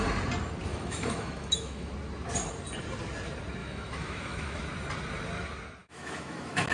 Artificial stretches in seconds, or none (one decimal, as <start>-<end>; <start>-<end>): 0.7-1.9; 3.6-4.6; 5.8-6.7